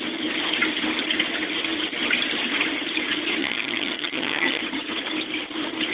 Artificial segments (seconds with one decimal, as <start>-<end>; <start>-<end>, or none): 3.4-4.6